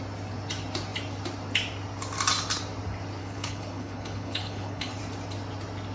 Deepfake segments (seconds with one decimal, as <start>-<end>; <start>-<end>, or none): 3.2-5.0